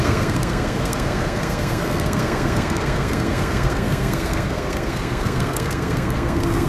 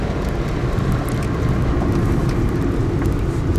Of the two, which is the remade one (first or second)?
first